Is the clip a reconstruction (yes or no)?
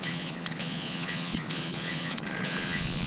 yes